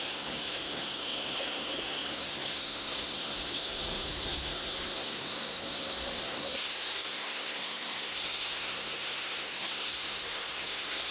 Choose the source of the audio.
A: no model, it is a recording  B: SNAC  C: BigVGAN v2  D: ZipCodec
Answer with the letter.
B